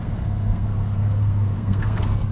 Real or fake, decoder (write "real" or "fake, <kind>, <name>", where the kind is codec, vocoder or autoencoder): fake, codec, SNAC